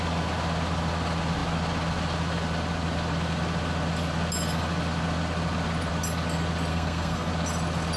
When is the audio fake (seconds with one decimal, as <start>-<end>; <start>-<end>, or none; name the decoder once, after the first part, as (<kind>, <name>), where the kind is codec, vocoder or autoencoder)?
6.7-7.3 (codec, SNAC)